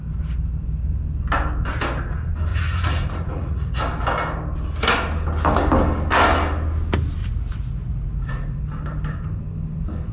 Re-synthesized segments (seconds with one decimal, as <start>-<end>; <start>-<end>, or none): 2.5-3.8; 7.2-8.6